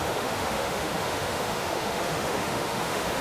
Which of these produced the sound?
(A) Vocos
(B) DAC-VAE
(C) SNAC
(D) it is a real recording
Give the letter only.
B